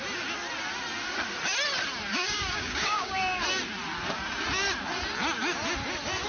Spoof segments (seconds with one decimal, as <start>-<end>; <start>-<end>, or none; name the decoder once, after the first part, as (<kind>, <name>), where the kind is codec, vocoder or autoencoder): 2.1-3.4 (codec, DAC)